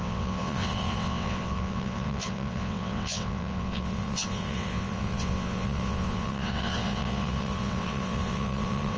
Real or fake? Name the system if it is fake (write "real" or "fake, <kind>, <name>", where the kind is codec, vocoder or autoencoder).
fake, vocoder, WaveNeXt